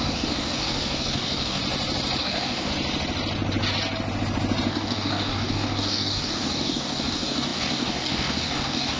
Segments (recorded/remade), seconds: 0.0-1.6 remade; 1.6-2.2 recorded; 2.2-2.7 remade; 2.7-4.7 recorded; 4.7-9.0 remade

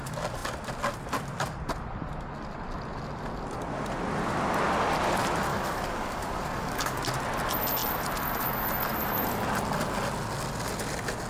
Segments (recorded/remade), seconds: 0.0-5.5 recorded; 5.5-7.0 remade; 7.0-11.3 recorded

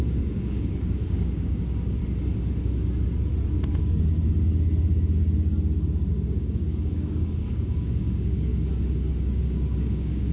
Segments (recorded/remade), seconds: 0.0-2.0 remade; 2.0-6.1 recorded; 6.1-8.5 remade; 8.5-9.4 recorded; 9.4-10.3 remade